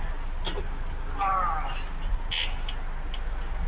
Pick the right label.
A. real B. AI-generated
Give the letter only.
A